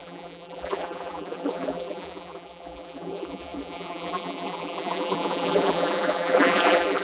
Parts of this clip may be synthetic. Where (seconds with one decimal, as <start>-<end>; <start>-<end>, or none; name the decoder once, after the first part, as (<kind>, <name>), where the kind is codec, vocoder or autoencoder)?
0.0-7.0 (vocoder, BigVGAN v2)